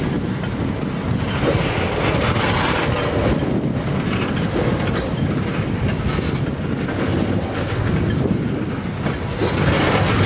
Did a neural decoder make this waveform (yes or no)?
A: no